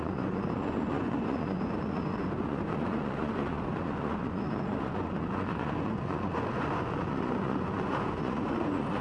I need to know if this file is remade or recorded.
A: remade